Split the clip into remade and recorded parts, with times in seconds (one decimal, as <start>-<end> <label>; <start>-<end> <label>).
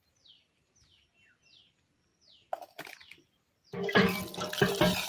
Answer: 0.0-5.1 recorded